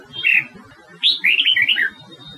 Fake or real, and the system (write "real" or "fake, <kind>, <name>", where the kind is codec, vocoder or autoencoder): real